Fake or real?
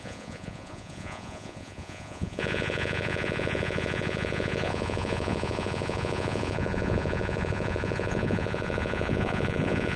fake